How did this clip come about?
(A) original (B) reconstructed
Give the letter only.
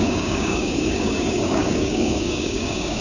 B